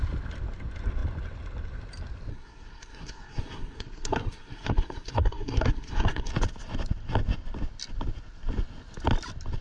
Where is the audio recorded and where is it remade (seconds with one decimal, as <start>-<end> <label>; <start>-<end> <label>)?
0.0-2.3 recorded; 2.3-6.3 remade; 6.3-9.6 recorded